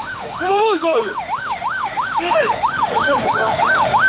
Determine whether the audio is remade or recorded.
remade